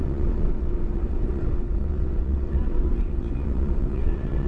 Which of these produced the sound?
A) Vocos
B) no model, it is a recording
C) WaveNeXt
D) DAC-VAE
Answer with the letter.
C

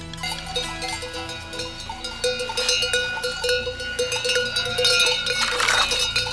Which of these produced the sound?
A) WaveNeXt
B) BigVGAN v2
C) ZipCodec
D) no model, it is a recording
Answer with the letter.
D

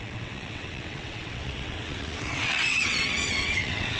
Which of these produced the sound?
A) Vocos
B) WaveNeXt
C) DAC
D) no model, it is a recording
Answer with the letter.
B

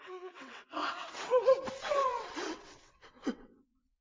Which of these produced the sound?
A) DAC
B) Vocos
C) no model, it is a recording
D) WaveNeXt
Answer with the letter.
D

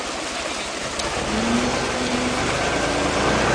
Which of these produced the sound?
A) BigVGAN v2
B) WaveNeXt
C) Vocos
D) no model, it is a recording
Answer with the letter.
D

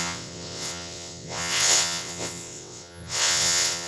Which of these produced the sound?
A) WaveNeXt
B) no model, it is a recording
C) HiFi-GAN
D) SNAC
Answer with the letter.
A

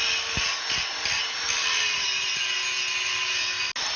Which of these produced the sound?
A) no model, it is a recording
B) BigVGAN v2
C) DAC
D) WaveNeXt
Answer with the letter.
A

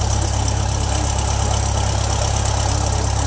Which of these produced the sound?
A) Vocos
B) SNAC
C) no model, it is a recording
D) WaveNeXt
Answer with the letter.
C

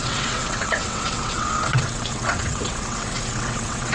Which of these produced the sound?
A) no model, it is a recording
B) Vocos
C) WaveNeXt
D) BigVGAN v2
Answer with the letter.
C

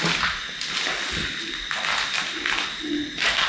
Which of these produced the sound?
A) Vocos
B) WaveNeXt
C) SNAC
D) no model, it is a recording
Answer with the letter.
D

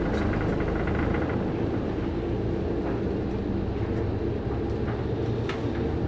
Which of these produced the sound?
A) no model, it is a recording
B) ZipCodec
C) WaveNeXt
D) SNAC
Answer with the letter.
A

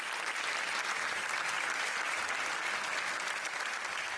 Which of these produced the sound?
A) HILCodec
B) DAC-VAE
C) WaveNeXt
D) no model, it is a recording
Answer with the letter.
D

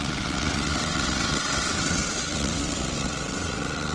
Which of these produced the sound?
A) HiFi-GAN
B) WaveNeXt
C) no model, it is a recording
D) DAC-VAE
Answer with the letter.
B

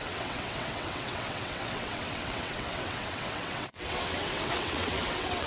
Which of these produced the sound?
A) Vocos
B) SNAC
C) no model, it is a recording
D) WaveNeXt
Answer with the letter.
D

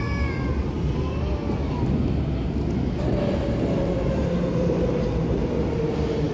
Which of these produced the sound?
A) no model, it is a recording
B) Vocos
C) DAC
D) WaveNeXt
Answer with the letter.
A